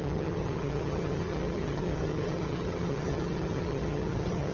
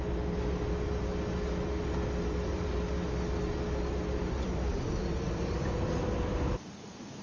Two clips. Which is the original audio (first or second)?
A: second